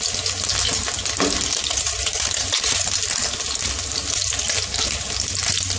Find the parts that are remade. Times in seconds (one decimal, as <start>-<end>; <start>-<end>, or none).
1.5-2.4